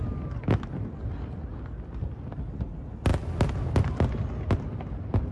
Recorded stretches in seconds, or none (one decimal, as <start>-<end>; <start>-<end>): 0.0-5.3